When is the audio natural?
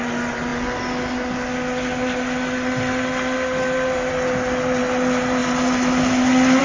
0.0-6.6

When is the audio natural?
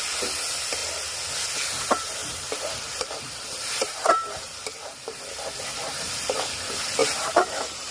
0.0-2.2; 5.2-5.7; 6.4-7.0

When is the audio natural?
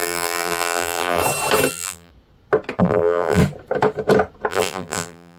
1.2-1.7; 2.1-2.8; 3.4-4.5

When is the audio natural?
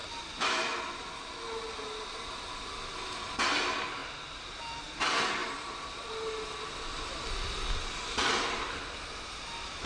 0.8-4.0; 4.6-9.9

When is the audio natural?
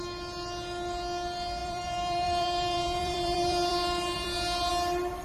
0.0-1.6; 4.7-5.2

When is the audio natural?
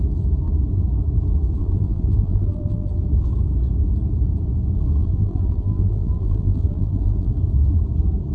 0.0-1.6; 3.0-5.0; 7.3-8.3